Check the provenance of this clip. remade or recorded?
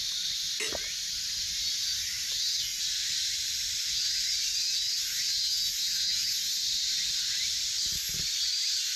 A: recorded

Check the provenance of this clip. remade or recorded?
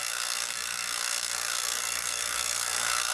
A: remade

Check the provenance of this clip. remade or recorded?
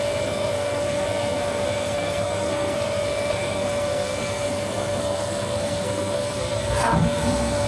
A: remade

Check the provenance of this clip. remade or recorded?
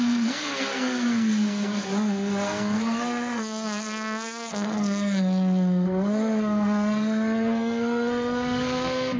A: remade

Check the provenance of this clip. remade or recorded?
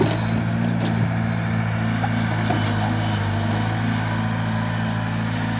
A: recorded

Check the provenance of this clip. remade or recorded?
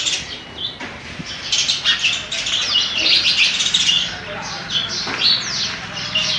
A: recorded